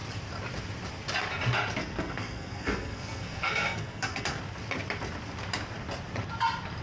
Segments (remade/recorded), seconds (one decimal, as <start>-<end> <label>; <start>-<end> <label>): 0.0-1.8 recorded; 1.8-4.4 remade; 4.4-6.8 recorded